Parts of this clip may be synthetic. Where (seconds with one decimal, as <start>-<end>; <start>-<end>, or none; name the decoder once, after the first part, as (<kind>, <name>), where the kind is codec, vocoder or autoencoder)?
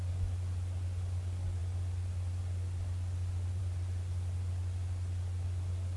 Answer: none